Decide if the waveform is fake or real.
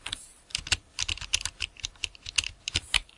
fake